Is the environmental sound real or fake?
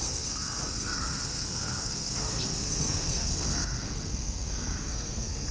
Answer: fake